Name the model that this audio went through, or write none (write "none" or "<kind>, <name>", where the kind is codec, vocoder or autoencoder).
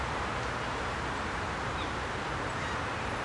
none